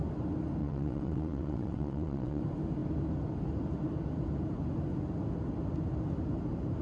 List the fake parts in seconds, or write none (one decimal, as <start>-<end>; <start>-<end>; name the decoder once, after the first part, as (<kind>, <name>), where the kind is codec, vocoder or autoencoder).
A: 0.6-2.4 (vocoder, WaveNeXt)